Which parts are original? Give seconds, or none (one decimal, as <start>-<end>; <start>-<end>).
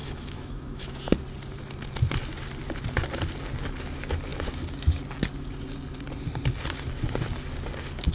1.0-8.1